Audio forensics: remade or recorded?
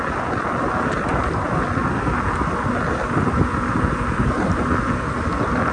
recorded